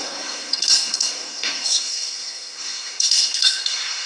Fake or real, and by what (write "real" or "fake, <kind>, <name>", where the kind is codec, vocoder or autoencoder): fake, codec, SNAC